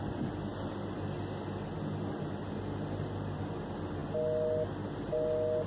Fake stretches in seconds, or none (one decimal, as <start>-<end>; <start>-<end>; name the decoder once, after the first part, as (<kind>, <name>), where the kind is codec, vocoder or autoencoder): none